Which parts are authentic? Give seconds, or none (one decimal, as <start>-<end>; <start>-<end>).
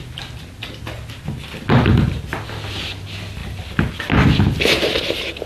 0.0-5.5